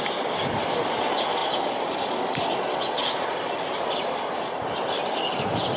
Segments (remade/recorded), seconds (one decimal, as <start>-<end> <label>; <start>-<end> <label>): 0.0-5.8 recorded